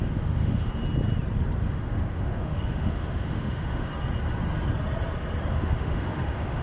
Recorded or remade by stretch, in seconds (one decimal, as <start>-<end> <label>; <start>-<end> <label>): 0.0-0.7 remade; 0.7-1.6 recorded; 1.6-3.9 remade; 3.9-5.5 recorded; 5.5-6.6 remade